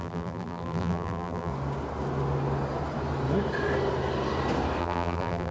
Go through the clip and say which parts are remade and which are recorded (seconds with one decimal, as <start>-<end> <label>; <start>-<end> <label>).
0.0-1.5 remade; 1.5-4.8 recorded; 4.8-5.5 remade